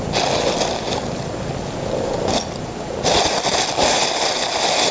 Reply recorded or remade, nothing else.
recorded